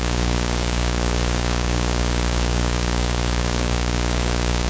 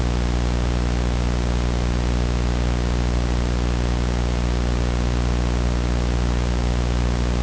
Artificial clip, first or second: first